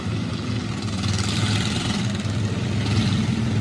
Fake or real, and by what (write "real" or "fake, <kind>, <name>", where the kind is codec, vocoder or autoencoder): real